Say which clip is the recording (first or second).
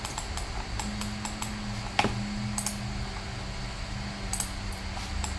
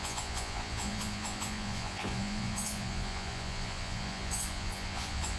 first